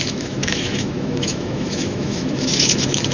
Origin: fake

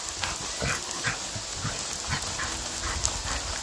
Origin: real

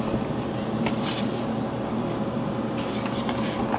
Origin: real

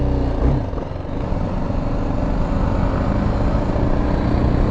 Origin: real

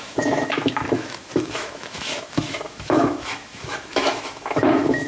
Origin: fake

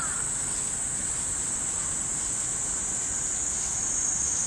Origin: real